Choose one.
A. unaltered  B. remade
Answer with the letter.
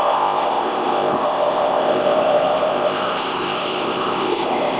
B